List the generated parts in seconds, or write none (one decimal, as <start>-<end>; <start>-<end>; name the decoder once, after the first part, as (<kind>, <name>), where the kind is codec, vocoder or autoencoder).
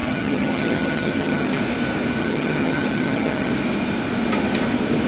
0.0-1.6 (vocoder, HiFi-GAN); 2.2-3.5